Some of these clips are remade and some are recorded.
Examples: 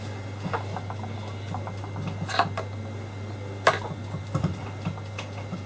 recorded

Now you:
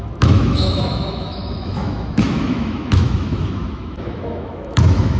remade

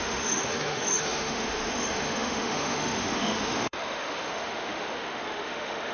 remade